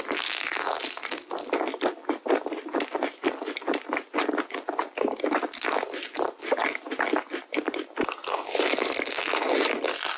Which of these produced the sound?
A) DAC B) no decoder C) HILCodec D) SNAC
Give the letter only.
B